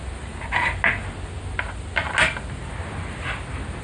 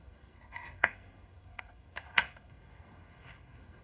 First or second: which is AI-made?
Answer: second